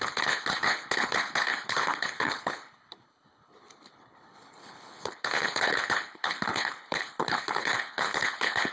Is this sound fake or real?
fake